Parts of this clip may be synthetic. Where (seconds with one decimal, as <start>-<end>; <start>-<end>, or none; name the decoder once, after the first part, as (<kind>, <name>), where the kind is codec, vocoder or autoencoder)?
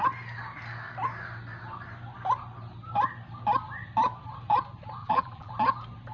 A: 5.0-5.5 (vocoder, BigVGAN v2)